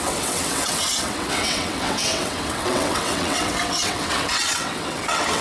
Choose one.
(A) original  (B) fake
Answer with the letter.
B